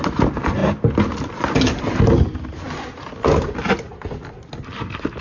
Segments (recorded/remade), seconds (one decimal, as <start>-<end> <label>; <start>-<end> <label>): 0.0-5.2 recorded